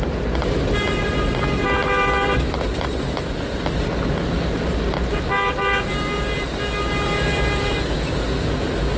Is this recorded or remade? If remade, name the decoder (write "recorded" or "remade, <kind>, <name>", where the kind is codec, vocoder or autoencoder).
recorded